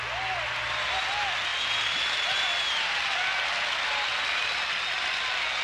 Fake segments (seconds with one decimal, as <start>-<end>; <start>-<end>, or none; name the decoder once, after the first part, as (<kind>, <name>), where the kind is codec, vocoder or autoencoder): none